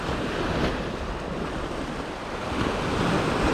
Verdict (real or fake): real